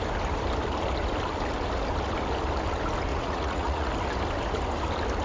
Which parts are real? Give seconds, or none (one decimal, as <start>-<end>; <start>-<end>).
0.0-3.1; 3.9-5.2